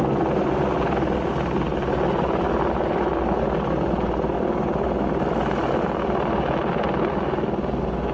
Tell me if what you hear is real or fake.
real